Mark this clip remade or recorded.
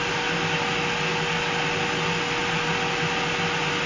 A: recorded